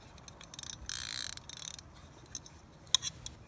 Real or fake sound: real